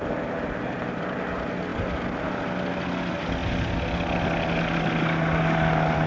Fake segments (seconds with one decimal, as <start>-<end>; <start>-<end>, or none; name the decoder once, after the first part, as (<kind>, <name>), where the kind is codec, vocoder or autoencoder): none